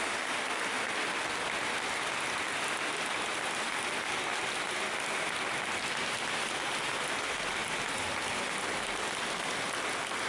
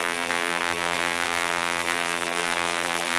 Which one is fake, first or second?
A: second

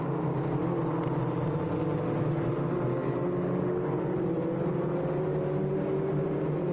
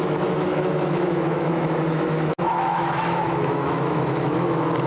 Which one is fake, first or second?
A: second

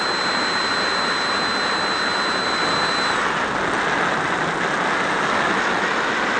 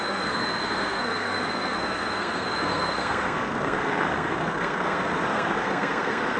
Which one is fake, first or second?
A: second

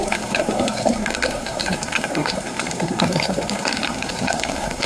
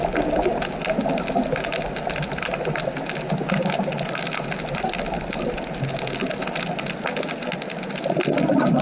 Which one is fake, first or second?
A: first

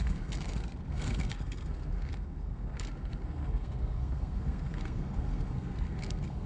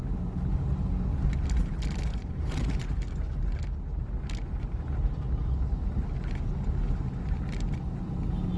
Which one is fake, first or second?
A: first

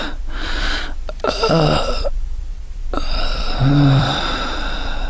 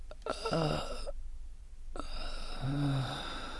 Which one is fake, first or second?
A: first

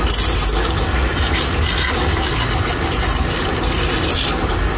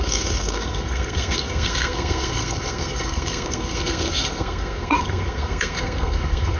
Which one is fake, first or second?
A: second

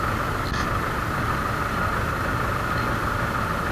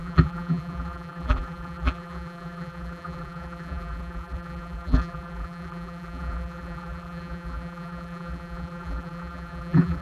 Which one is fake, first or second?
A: second